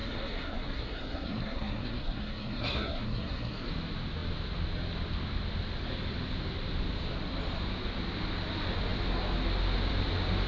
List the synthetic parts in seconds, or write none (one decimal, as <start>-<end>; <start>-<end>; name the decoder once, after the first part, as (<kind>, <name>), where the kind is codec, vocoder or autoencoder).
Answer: 0.0-3.7 (codec, SNAC)